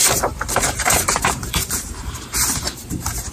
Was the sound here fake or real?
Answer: fake